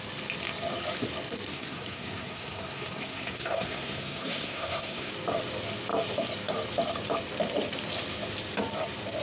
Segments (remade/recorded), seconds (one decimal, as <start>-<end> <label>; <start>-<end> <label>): 0.0-1.5 recorded; 1.5-5.1 remade; 5.1-9.2 recorded